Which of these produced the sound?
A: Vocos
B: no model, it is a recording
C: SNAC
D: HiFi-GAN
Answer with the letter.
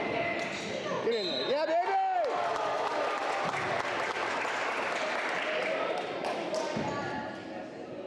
B